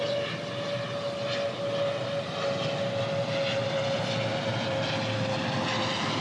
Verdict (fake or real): real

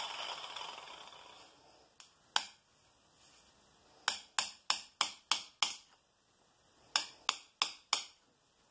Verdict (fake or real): real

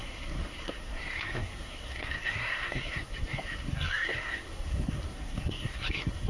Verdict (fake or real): fake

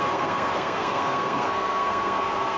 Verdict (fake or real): fake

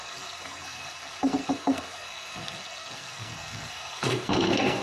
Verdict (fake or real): fake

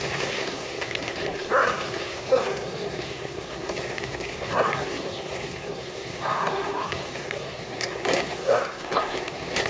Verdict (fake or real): fake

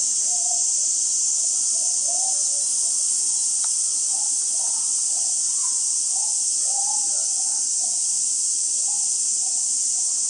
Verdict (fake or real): real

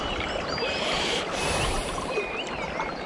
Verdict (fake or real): real